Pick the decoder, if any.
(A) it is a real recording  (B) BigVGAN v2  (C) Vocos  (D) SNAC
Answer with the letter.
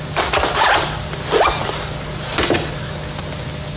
A